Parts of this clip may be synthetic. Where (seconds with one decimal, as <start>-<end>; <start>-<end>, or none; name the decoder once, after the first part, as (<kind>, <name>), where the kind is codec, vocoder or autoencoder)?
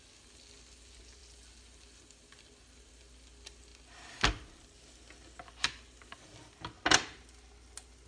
none